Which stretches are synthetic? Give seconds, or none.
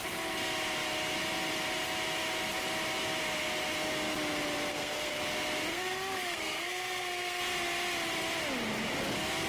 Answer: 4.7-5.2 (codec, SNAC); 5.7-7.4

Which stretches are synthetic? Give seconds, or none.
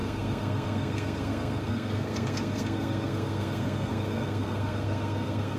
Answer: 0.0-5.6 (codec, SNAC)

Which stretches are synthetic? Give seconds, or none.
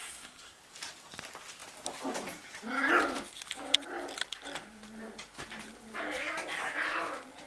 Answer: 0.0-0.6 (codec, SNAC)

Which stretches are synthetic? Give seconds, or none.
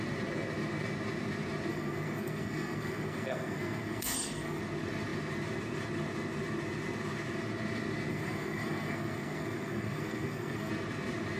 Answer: 1.7-4.6 (codec, SNAC); 8.1-10.7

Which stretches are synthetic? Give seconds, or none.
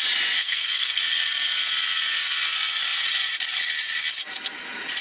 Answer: 0.4-1.0 (codec, SNAC)